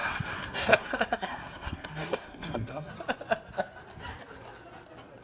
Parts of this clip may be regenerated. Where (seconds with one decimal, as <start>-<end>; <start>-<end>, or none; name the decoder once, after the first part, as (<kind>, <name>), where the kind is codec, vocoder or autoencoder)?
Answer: 0.0-2.9 (codec, SNAC)